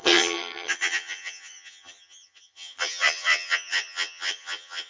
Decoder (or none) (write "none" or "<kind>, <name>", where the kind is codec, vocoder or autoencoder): vocoder, HiFi-GAN